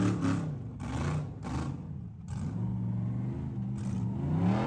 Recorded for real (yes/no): yes